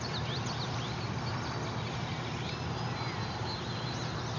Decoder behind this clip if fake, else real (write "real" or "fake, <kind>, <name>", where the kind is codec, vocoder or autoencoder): real